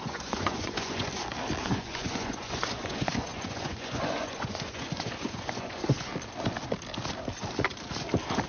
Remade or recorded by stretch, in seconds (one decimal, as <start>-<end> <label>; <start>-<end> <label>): 0.0-1.1 remade; 1.1-1.6 recorded; 1.6-6.1 remade; 6.1-8.5 recorded